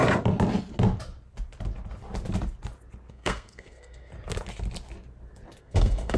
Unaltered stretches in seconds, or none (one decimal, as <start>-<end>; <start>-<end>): 0.0-3.1; 4.1-5.6